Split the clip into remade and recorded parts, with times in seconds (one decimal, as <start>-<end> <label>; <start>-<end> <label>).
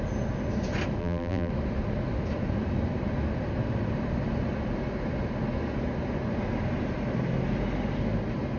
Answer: 0.0-1.0 recorded; 1.0-1.5 remade; 1.5-8.6 recorded